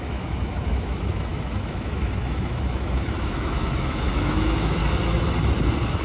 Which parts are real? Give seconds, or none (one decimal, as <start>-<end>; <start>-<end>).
4.8-6.0